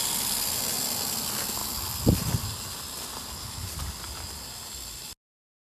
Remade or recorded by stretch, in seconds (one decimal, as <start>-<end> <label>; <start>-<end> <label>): 0.0-5.7 recorded